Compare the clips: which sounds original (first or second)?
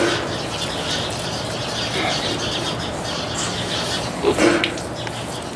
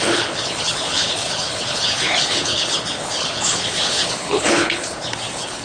first